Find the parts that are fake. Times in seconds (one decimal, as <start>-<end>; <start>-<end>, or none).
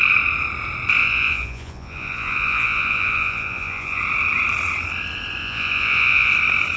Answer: 1.0-4.0; 5.4-6.3